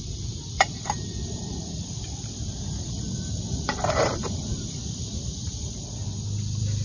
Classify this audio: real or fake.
fake